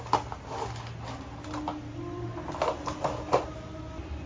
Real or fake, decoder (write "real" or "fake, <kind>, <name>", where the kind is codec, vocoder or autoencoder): real